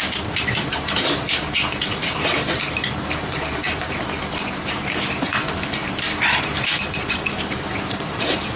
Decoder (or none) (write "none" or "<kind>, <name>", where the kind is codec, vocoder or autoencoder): vocoder, BigVGAN v2